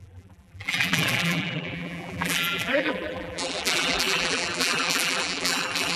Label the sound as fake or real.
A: fake